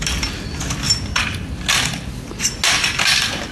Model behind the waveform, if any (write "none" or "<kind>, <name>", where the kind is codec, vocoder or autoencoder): none